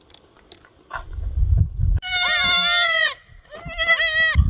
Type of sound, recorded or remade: recorded